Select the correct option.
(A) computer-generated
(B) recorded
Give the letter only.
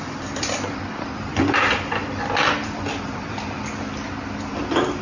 A